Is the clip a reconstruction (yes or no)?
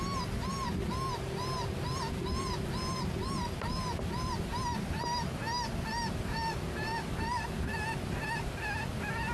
no